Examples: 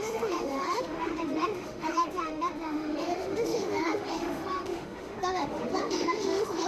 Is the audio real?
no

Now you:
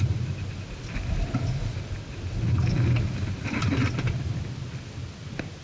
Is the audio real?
yes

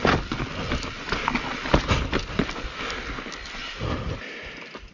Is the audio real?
yes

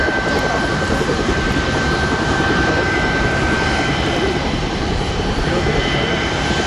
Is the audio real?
no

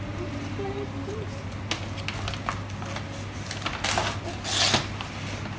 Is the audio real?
yes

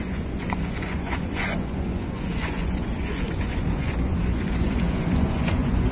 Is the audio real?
no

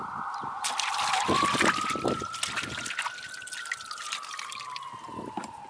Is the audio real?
yes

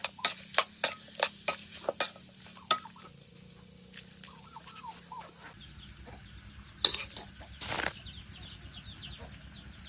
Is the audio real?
yes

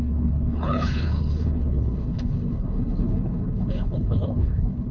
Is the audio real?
no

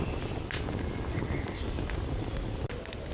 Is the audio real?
yes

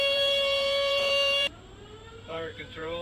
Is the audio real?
no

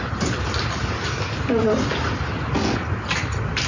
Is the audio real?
yes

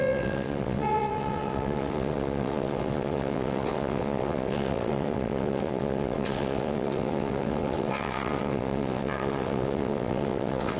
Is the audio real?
no